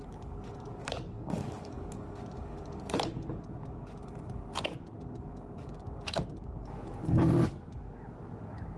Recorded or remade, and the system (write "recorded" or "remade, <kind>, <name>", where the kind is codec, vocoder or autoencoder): remade, codec, DAC